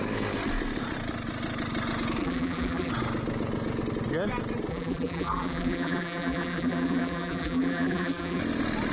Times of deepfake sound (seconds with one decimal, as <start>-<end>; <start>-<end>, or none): 2.2-2.9; 4.7-8.4